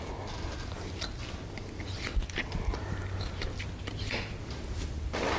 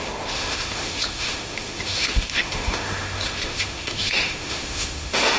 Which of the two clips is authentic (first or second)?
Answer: first